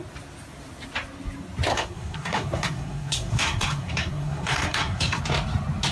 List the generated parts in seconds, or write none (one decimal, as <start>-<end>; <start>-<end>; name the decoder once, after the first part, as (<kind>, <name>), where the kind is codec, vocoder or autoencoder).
1.7-5.2 (codec, SNAC)